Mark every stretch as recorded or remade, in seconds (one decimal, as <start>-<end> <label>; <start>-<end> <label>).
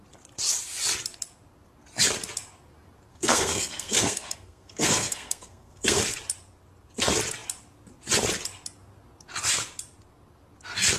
0.0-3.1 recorded; 3.1-6.0 remade; 6.0-11.0 recorded